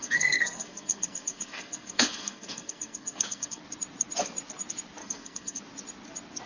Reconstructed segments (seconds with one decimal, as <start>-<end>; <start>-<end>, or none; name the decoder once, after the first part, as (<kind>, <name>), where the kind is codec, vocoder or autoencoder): 0.0-3.6 (codec, SNAC); 5.0-5.6